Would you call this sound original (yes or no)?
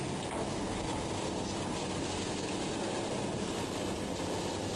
yes